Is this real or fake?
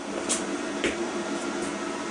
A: real